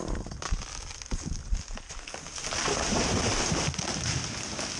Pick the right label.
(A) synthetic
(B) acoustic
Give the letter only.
B